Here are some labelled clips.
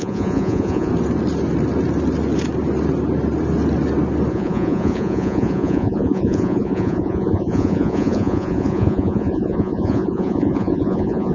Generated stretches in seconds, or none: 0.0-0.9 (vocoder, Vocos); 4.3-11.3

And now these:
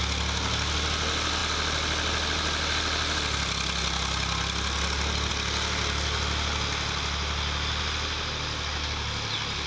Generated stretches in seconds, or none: none

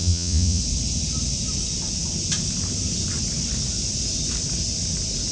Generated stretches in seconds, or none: 0.0-0.6 (vocoder, Vocos)

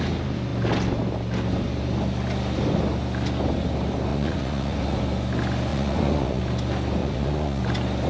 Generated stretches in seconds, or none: 4.1-5.0 (vocoder, Vocos); 5.7-6.4; 7.0-7.6